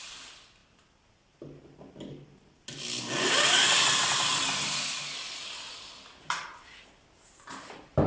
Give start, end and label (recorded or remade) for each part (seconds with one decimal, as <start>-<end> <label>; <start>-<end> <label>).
0.0-8.1 recorded